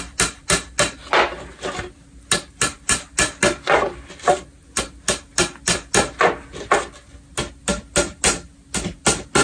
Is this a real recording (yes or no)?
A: yes